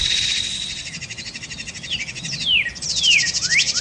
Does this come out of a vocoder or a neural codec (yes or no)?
no